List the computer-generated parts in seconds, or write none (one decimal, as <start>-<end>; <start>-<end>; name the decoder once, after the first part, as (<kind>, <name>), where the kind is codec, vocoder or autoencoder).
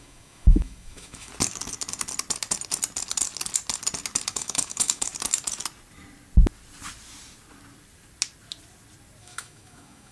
0.0-1.3 (autoencoder, DAC-VAE); 4.3-5.1; 9.2-10.1